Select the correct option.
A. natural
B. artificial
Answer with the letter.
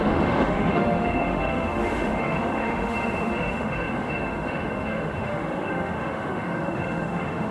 B